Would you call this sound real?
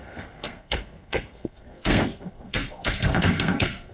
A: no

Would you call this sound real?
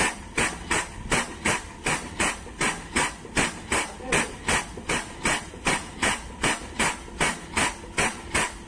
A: yes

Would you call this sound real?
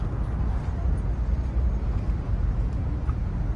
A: yes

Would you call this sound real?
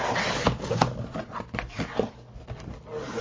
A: yes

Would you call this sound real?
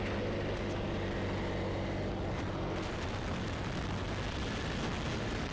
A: yes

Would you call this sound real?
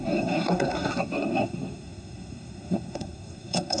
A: no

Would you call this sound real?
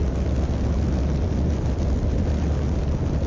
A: yes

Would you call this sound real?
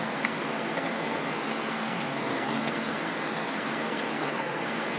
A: no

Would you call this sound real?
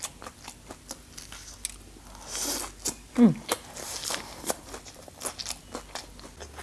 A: yes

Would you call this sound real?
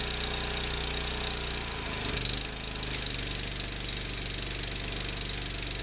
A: yes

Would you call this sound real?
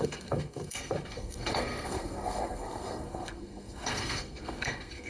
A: no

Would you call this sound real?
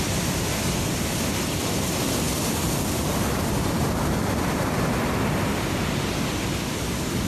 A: yes